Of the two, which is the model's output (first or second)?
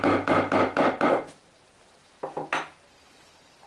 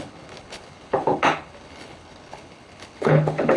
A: second